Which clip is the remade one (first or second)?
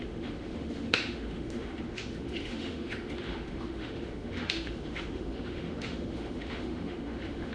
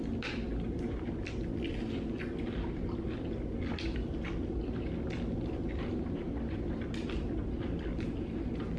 first